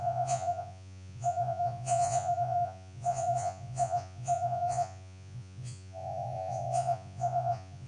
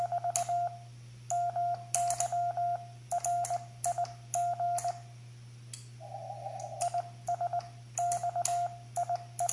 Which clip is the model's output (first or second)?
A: first